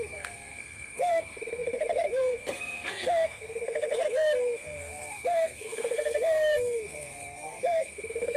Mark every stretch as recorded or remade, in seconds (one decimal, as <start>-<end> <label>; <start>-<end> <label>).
0.0-8.4 remade